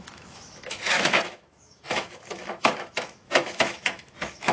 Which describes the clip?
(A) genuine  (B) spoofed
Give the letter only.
B